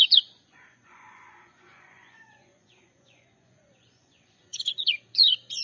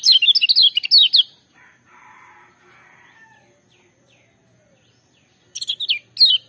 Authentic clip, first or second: second